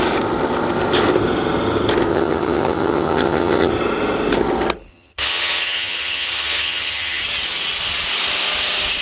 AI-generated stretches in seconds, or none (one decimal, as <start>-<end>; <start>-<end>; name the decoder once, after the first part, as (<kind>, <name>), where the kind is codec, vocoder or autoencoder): 2.1-3.7 (vocoder, HiFi-GAN); 4.9-7.2